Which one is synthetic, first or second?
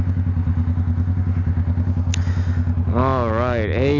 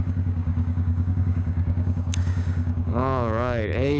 second